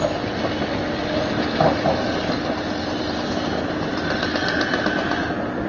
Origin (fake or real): real